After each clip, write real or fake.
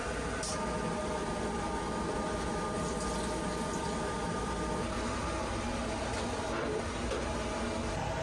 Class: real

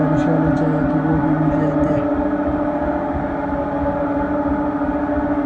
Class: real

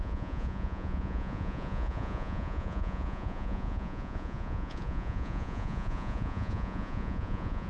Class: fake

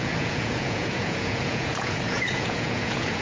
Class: fake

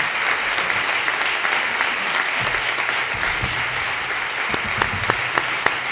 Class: real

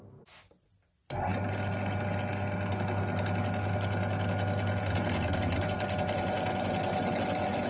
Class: real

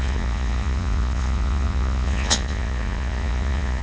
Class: fake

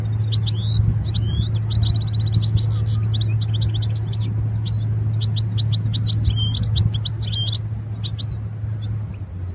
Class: real